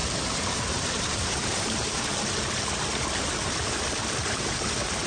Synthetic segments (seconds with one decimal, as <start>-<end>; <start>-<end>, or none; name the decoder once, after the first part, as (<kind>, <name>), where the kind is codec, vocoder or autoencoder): 0.0-2.1 (vocoder, BigVGAN v2); 3.9-5.1